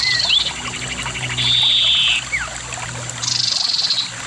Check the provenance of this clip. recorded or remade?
recorded